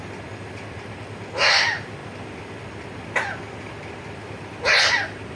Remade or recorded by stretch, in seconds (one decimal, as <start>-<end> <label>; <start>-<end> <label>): 0.0-5.4 recorded